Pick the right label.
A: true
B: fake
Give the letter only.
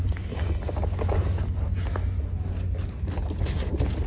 A